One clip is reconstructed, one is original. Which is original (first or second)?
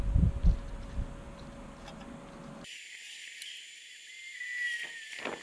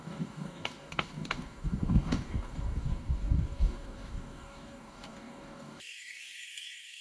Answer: first